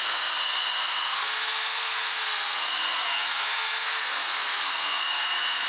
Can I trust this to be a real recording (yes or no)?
no